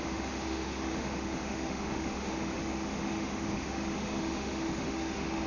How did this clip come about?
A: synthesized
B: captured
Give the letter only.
A